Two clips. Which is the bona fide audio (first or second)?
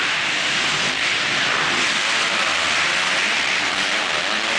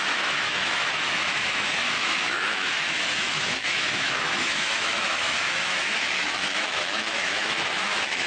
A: first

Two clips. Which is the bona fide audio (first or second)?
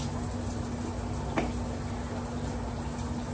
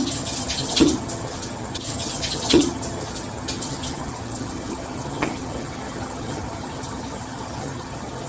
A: first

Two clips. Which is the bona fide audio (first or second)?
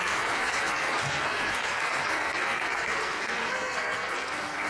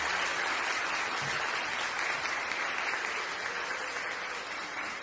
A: second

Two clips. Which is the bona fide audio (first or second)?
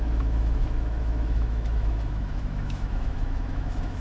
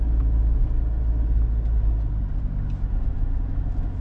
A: second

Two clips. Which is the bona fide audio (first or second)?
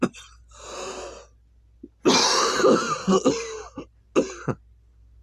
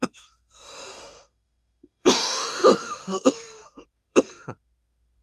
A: first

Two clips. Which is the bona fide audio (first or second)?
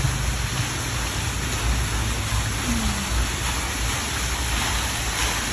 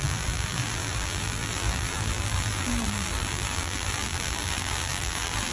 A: first